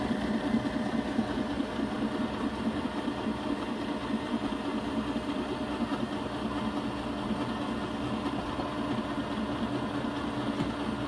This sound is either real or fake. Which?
real